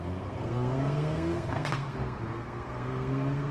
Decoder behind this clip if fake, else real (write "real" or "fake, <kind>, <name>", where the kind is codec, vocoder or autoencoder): fake, codec, SNAC